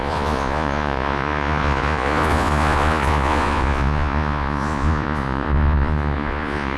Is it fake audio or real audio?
fake